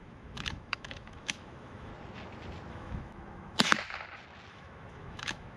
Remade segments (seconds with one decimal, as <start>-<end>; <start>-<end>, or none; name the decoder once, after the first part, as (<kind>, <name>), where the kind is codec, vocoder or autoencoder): 0.0-1.9 (autoencoder, DAC-VAE); 2.7-3.7; 4.5-5.6